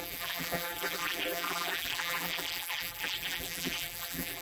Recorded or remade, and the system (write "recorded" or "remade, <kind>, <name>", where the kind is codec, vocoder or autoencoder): remade, vocoder, BigVGAN v2